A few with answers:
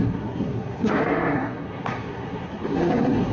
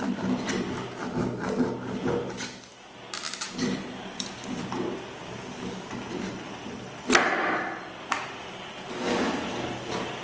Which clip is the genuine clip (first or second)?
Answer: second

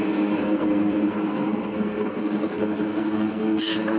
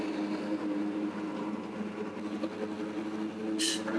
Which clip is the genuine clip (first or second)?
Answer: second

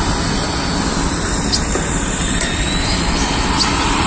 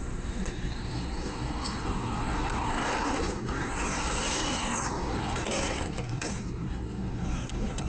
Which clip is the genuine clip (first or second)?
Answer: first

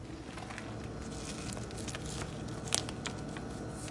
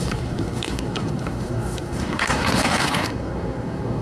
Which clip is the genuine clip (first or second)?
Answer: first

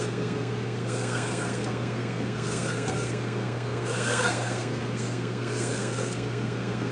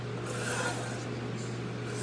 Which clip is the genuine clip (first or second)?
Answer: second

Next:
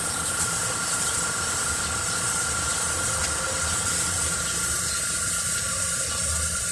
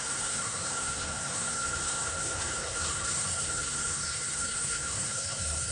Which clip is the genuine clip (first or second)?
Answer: first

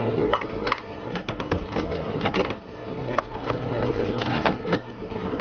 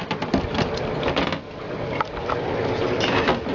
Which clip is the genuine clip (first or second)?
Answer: second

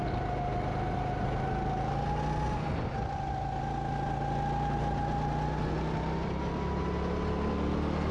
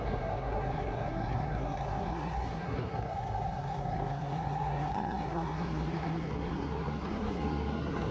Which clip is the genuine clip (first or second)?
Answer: first